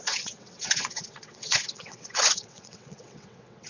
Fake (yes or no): yes